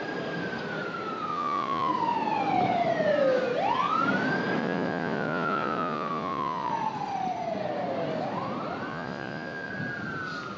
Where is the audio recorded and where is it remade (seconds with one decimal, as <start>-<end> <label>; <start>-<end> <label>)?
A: 0.0-1.3 recorded; 1.3-1.9 remade; 1.9-4.6 recorded; 4.6-6.7 remade; 6.7-8.9 recorded; 8.9-9.7 remade; 9.7-10.6 recorded